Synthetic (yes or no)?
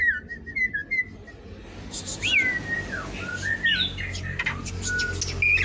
no